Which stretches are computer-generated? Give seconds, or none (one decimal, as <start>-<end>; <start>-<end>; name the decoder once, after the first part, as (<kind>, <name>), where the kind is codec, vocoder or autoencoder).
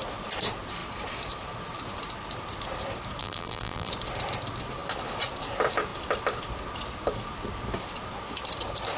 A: 3.2-3.9 (vocoder, BigVGAN v2)